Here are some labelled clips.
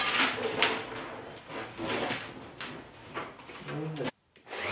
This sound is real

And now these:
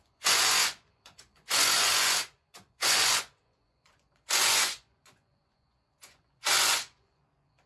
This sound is fake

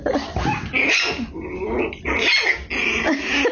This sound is real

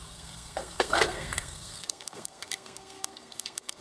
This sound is fake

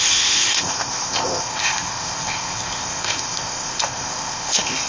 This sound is fake